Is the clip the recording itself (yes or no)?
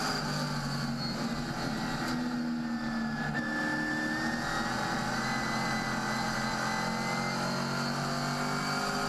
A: yes